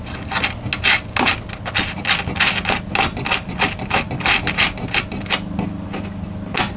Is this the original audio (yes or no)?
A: yes